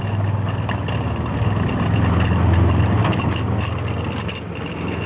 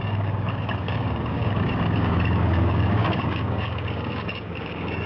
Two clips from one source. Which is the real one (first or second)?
first